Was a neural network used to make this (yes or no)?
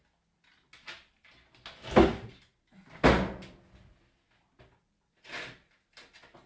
no